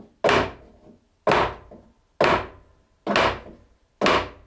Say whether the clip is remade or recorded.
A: recorded